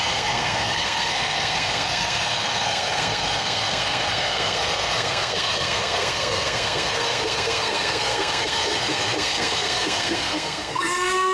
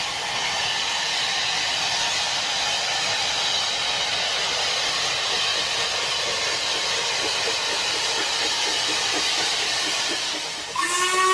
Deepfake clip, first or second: first